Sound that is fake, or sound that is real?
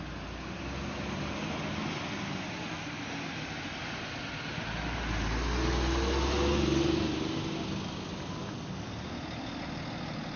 real